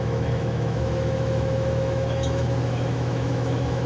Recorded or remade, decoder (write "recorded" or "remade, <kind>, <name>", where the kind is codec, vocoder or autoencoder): remade, autoencoder, DAC-VAE